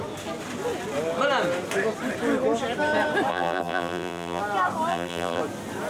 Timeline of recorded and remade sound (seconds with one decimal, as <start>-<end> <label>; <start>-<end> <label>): 0.0-3.3 recorded; 3.3-4.4 remade; 4.4-4.9 recorded; 4.9-5.4 remade; 5.4-5.9 recorded